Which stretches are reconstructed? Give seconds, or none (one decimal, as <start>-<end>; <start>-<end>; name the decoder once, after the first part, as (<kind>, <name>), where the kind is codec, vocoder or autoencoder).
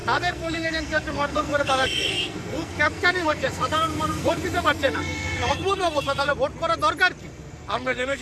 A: 0.0-6.3 (codec, SNAC); 7.2-8.2